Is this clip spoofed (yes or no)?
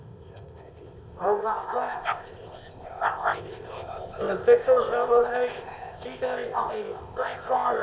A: yes